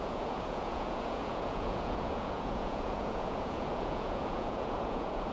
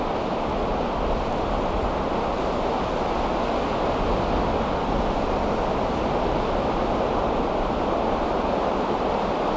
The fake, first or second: first